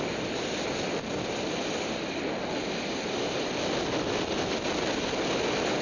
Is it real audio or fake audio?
real